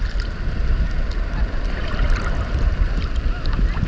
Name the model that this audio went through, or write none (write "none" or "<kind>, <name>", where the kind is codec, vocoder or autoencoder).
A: none